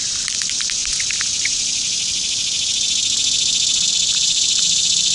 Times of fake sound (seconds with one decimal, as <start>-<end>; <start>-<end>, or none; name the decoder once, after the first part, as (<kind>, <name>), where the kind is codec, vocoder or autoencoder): 0.0-0.8 (vocoder, BigVGAN v2); 3.9-5.1